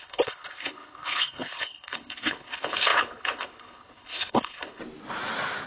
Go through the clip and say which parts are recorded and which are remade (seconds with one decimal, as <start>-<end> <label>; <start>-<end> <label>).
0.0-4.8 remade; 4.8-5.7 recorded